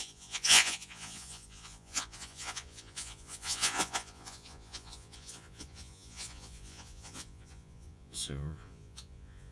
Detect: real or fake fake